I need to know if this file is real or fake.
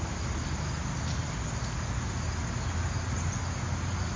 real